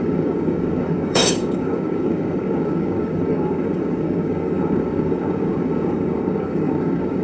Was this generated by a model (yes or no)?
yes